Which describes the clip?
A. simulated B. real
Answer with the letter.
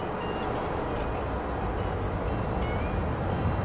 B